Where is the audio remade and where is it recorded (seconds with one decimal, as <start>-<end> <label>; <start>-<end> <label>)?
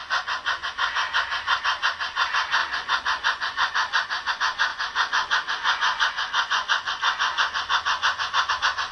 0.0-0.7 remade; 0.7-2.6 recorded; 2.6-4.3 remade; 4.3-4.7 recorded; 4.7-8.5 remade; 8.5-8.9 recorded